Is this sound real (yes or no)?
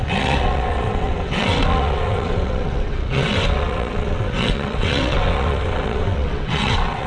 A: no